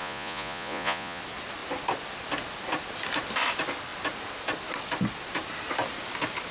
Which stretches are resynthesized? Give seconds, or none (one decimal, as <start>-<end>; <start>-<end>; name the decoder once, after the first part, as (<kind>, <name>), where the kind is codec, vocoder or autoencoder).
0.0-1.2 (vocoder, Vocos)

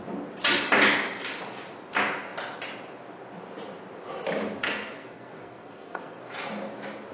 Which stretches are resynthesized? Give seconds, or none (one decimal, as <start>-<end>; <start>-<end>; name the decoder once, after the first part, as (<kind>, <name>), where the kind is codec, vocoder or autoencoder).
4.6-6.2 (codec, SNAC)

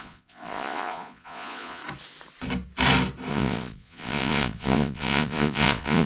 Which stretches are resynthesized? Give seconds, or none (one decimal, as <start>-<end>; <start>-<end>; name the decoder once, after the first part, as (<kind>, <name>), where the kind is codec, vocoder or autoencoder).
0.0-1.8 (vocoder, Vocos); 3.3-6.1

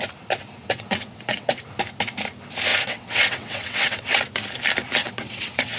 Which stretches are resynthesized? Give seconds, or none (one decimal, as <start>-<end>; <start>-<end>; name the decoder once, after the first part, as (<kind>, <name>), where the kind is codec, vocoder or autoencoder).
0.6-1.6 (vocoder, WaveNeXt); 2.7-4.2; 5.0-5.8

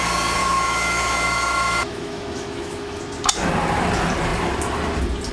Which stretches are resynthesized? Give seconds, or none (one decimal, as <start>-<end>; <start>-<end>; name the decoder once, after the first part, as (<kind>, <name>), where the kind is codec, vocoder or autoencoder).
0.4-3.0 (autoencoder, DAC-VAE)